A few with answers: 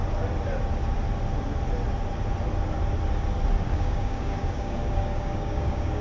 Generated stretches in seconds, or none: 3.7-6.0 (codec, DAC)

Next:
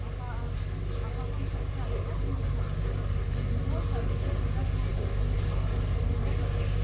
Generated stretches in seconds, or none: none

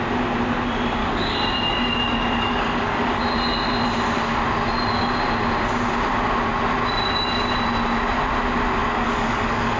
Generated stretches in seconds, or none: 1.0-3.2 (codec, DAC); 8.8-9.8

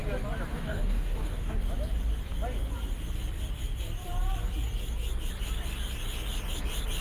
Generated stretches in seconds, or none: 0.5-1.6 (codec, DAC)

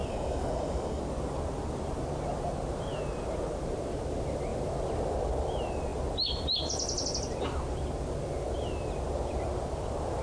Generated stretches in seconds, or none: 0.0-1.0 (codec, DAC)

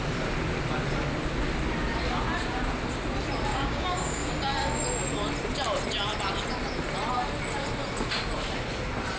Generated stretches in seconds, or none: 3.5-4.3 (codec, DAC)

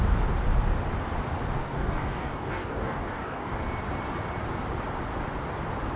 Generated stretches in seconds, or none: 1.6-3.6 (codec, DAC)